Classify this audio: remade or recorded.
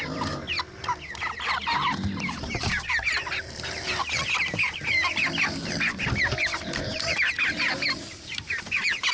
recorded